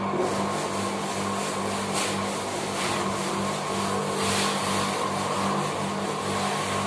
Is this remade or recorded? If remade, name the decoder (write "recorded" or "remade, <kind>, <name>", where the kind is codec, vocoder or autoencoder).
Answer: recorded